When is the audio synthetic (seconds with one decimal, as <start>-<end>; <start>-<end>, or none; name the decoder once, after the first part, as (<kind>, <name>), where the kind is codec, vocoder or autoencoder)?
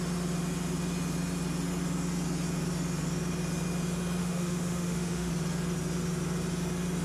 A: 4.2-5.3 (autoencoder, DAC-VAE)